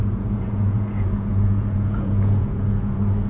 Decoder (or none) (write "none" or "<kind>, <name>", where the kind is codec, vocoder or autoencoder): vocoder, Vocos